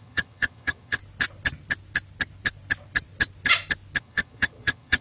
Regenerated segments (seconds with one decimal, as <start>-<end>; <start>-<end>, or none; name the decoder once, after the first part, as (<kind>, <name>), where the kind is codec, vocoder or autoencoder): 0.0-1.0 (vocoder, HiFi-GAN); 4.0-5.0